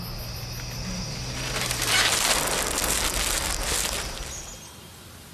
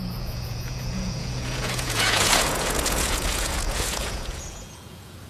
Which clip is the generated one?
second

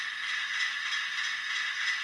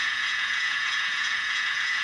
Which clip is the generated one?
second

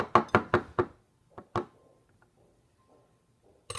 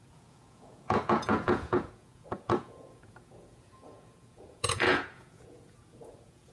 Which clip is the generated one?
second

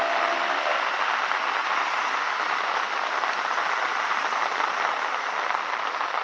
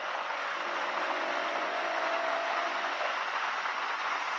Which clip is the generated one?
second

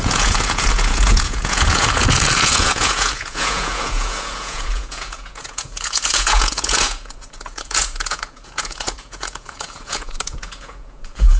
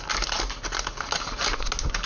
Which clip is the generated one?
first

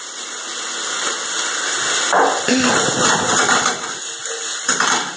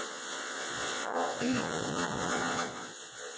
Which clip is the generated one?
second